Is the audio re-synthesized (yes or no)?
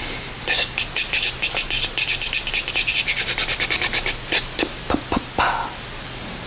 no